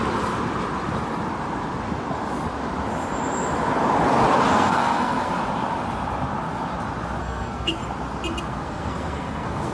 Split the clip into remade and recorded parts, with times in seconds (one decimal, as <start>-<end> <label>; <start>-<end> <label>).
0.0-4.5 recorded; 4.5-5.3 remade; 5.3-7.2 recorded; 7.2-7.8 remade; 7.8-8.4 recorded; 8.4-9.7 remade